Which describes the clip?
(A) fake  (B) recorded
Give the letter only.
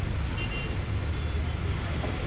B